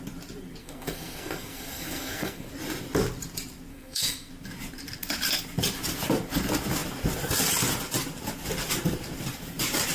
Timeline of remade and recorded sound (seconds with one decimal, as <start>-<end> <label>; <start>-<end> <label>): 0.0-0.6 recorded; 0.6-2.5 remade; 2.5-3.7 recorded; 3.7-4.3 remade; 4.3-9.9 recorded